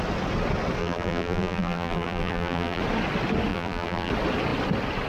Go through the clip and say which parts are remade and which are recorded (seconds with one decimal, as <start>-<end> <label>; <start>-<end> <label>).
0.0-0.8 recorded; 0.8-2.8 remade; 2.8-3.5 recorded; 3.5-4.1 remade; 4.1-5.1 recorded